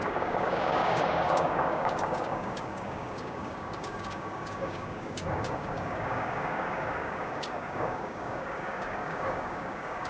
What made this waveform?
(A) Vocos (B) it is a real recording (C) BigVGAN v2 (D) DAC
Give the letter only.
D